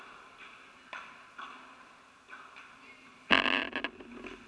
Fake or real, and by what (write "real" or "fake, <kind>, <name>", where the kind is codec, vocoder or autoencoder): real